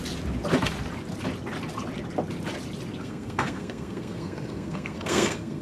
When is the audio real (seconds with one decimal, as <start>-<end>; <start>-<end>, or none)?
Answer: 0.0-3.0